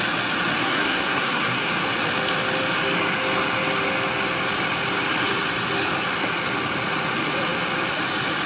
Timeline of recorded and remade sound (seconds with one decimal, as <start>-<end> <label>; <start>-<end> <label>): 0.0-0.6 recorded; 0.6-1.7 remade; 1.7-8.5 recorded